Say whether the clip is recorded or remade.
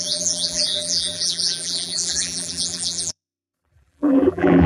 remade